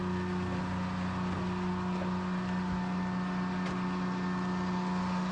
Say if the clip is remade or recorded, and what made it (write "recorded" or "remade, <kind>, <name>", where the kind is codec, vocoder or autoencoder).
recorded